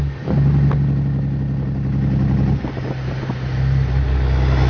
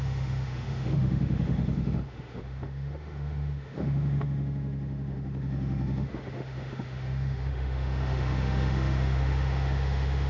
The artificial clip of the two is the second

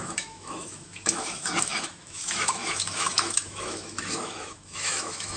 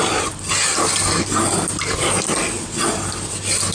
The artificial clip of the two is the first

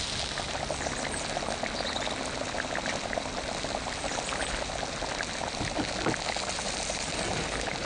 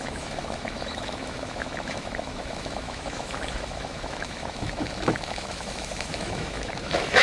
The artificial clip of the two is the second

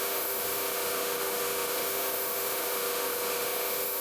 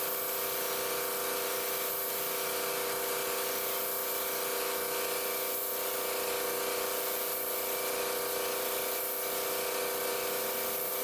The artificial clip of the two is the first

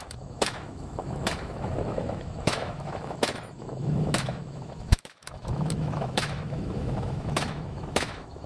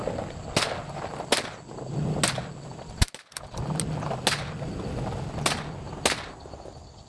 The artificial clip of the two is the first